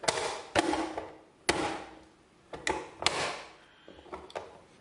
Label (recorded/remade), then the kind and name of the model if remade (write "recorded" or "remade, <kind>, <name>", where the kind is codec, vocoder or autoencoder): recorded